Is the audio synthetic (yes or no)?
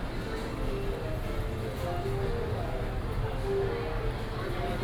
no